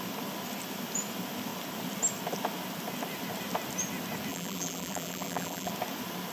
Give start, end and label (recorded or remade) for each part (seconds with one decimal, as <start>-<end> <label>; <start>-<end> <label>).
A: 0.0-4.3 recorded; 4.3-5.7 remade; 5.7-6.3 recorded